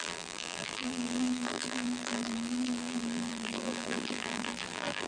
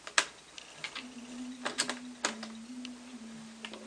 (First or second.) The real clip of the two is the second